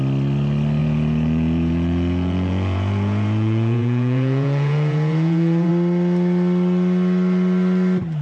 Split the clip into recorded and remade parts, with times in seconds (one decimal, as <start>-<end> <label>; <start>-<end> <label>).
0.0-0.8 recorded; 0.8-5.7 remade; 5.7-8.2 recorded